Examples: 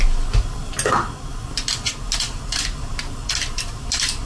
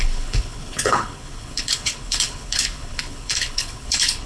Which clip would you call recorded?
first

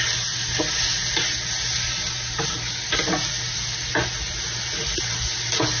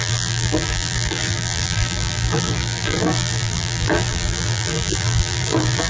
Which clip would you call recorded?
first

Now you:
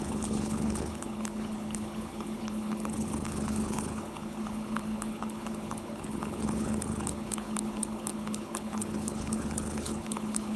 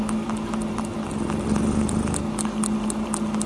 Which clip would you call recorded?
second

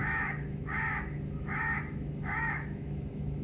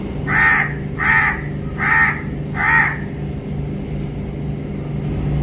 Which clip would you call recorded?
second